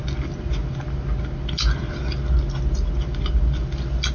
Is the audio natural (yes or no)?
yes